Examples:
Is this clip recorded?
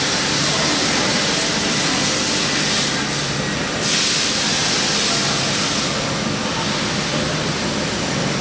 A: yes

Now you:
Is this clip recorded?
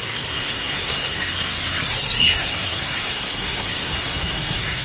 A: no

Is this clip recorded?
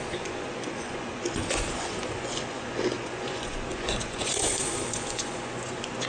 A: no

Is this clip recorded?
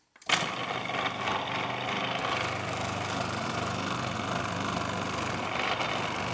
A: yes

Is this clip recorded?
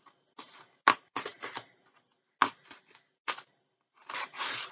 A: yes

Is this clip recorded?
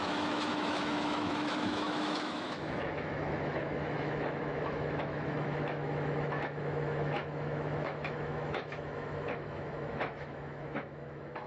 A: no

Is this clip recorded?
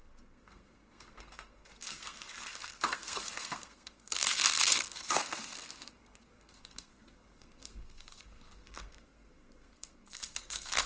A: no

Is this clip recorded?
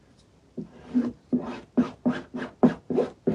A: yes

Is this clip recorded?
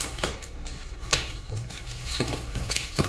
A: no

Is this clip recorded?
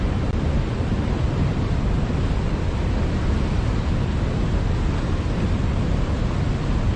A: yes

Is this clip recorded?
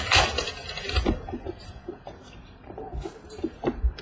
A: no